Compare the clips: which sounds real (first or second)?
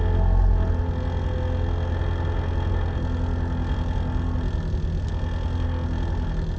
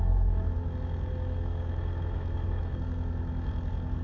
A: first